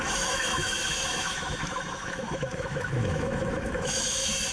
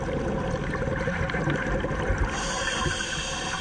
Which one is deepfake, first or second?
first